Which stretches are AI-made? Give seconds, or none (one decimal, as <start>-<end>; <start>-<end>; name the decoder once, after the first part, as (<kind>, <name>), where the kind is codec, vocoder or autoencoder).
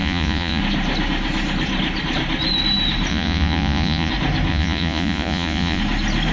0.0-0.6 (vocoder, Vocos); 3.1-4.1; 4.5-5.8